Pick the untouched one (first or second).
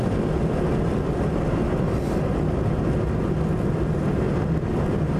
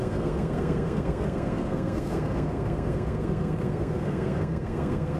first